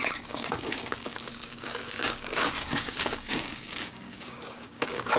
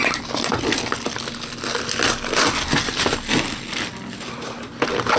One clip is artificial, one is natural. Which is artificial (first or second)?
first